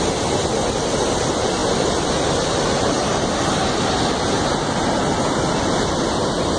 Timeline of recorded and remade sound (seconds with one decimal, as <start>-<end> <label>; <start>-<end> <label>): 0.0-6.6 recorded